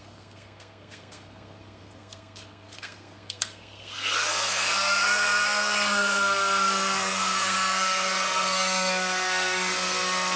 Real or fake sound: fake